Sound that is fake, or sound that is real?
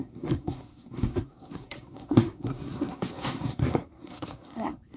fake